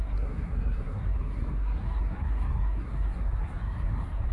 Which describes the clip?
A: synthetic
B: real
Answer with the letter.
A